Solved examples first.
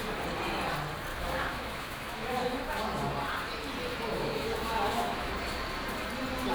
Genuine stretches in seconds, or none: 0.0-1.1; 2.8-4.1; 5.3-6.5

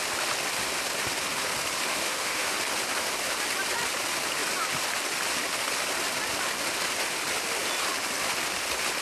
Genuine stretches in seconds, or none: 0.0-1.9; 2.6-9.0

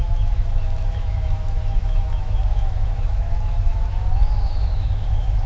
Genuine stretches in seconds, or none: none